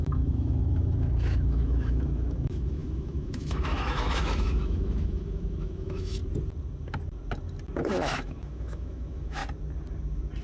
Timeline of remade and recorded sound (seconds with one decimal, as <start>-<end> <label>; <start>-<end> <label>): 0.0-6.2 remade; 6.2-7.8 recorded; 7.8-9.4 remade; 9.4-10.4 recorded